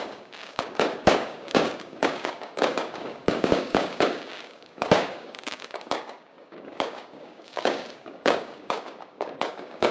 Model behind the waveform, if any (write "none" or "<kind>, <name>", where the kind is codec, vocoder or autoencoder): codec, DAC